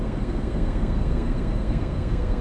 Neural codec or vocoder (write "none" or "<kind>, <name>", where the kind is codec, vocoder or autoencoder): codec, SNAC